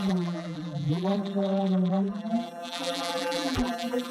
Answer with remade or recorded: remade